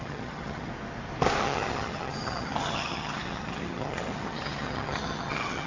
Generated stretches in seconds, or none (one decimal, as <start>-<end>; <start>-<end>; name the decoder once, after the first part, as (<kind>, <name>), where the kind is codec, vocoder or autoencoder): 0.0-0.7 (vocoder, HiFi-GAN); 1.4-5.7